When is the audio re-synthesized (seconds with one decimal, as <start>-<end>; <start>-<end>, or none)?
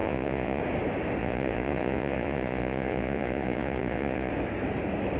0.0-0.6; 1.2-4.3